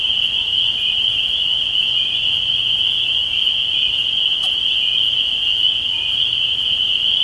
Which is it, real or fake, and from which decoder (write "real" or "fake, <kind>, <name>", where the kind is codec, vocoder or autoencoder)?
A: fake, vocoder, Vocos